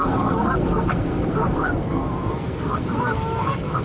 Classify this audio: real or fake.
fake